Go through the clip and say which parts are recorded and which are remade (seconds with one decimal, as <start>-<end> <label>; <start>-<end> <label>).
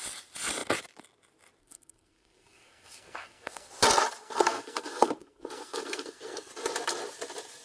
0.0-1.6 recorded; 1.6-3.7 remade; 3.7-4.2 recorded; 4.2-6.5 remade; 6.5-7.6 recorded